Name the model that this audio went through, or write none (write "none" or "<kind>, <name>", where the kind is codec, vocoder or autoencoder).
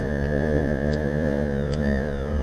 vocoder, Vocos